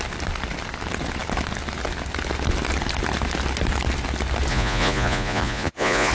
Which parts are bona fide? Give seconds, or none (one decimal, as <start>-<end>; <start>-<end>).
0.0-4.5